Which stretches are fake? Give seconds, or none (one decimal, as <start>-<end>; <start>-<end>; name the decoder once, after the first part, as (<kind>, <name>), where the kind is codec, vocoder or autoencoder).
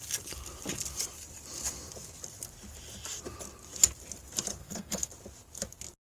4.6-5.1 (codec, SNAC)